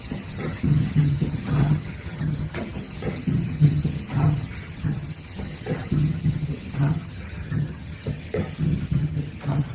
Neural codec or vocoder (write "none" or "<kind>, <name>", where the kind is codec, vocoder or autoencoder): vocoder, HiFi-GAN